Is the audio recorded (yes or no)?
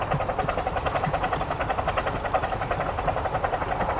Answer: yes